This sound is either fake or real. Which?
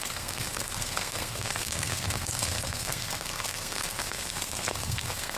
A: fake